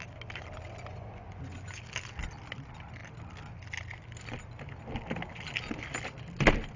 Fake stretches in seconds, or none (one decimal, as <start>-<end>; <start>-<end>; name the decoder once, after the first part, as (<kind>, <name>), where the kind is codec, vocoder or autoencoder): 0.9-1.7 (vocoder, Vocos)